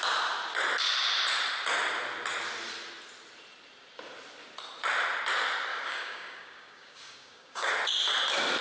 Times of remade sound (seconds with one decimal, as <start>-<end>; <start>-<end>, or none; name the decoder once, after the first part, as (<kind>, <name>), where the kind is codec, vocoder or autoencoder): 5.7-7.7 (codec, DAC)